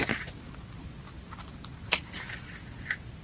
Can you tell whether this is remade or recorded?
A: recorded